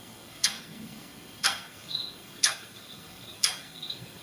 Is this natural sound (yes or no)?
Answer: no